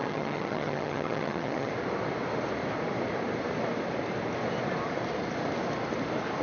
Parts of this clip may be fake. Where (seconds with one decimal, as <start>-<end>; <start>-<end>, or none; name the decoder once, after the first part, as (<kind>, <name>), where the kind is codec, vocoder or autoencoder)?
0.0-1.7 (vocoder, HiFi-GAN)